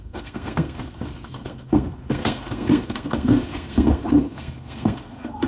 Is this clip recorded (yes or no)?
no